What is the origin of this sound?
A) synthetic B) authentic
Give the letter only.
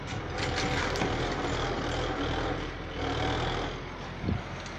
B